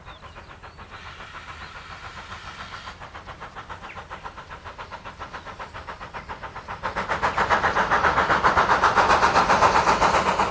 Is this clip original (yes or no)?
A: yes